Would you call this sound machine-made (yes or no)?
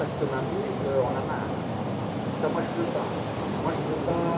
no